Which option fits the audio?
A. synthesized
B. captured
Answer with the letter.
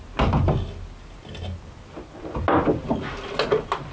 B